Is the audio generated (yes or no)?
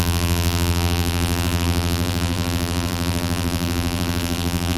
yes